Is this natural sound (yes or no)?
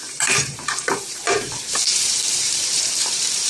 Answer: no